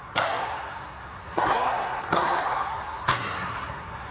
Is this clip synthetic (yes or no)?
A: yes